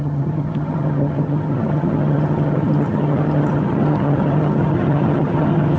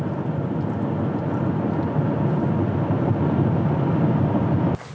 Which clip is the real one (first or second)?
second